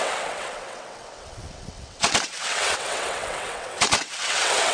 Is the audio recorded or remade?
remade